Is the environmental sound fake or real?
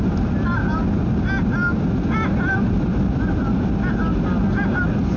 real